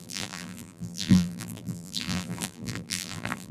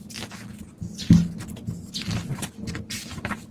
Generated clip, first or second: first